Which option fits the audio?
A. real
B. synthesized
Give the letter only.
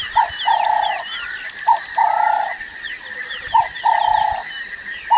A